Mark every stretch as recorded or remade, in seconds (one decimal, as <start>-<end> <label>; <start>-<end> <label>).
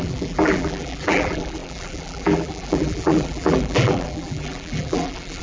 0.0-5.4 remade